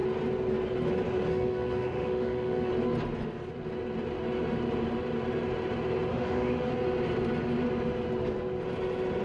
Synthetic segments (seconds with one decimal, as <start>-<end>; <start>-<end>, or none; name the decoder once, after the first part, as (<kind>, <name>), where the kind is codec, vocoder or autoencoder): 1.3-2.7 (autoencoder, DAC-VAE); 6.1-6.7